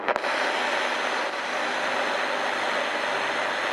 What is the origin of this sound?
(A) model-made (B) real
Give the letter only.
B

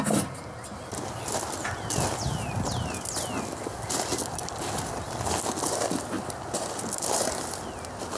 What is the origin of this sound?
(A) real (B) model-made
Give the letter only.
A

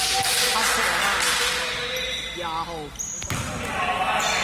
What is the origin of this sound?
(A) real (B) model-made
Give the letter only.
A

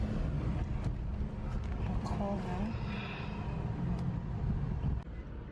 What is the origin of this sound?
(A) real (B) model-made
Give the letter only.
A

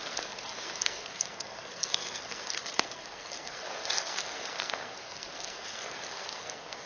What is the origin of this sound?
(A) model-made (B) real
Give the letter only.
A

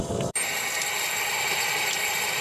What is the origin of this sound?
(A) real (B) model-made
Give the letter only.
A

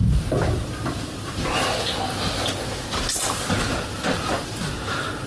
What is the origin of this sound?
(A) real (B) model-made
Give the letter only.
A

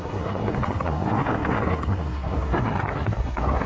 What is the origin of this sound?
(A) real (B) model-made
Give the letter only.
B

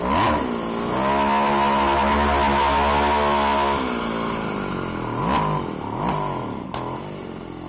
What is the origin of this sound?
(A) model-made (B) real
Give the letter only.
B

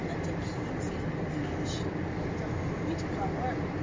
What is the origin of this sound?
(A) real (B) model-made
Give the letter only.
A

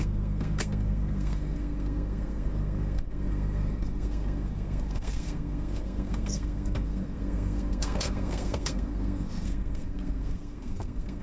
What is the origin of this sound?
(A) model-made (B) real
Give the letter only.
A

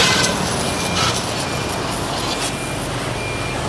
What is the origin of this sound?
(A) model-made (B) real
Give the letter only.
B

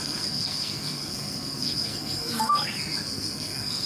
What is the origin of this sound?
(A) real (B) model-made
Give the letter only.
B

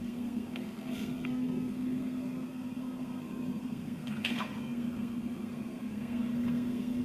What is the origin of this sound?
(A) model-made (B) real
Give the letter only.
A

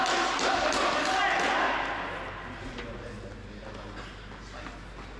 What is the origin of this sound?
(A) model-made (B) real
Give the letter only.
B